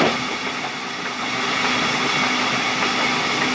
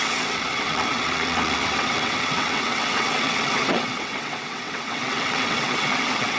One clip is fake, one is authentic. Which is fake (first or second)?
second